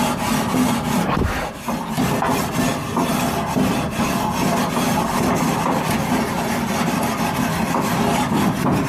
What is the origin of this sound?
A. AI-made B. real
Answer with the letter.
B